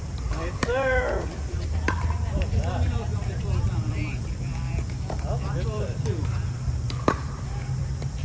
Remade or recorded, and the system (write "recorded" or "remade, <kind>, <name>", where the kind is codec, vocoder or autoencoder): remade, vocoder, BigVGAN v2